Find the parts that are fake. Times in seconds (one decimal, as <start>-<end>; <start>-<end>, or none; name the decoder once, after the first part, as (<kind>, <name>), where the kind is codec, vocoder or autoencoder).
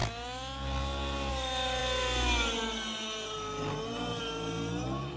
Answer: none